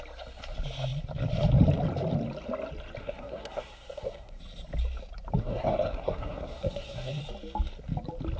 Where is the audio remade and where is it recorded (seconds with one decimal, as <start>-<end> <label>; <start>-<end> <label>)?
0.0-3.0 recorded; 3.0-4.4 remade; 4.4-5.4 recorded; 5.4-7.2 remade; 7.2-8.4 recorded